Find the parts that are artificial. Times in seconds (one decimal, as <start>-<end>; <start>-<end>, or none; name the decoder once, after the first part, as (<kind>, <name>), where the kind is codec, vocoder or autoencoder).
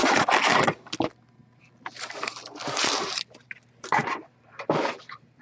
4.0-5.4 (vocoder, BigVGAN v2)